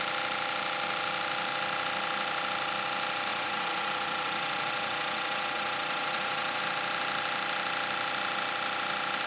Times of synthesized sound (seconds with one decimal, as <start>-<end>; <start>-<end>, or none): 3.3-6.6